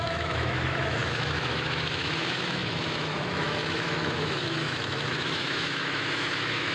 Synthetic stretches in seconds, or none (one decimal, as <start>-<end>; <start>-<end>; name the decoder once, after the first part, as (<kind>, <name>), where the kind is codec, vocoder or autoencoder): 0.0-6.7 (autoencoder, DAC-VAE)